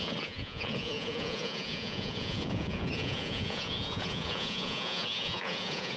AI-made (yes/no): yes